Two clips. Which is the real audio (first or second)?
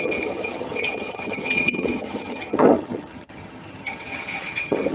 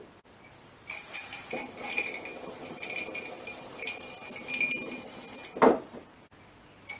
second